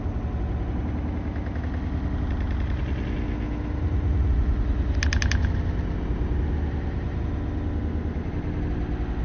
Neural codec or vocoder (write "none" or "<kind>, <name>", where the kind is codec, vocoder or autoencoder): none